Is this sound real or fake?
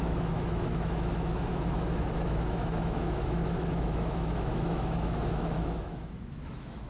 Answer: fake